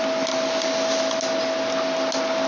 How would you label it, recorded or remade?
recorded